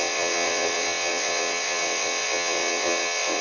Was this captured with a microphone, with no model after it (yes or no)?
no